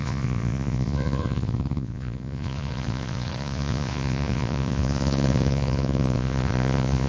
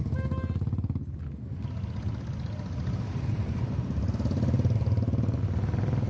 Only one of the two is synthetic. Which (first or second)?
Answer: first